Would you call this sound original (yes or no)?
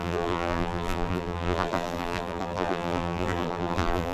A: no